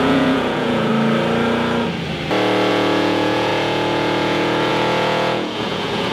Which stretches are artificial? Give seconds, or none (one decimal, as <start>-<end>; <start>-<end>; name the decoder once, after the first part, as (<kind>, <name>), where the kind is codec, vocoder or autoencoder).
0.0-0.9 (vocoder, Vocos); 2.7-6.1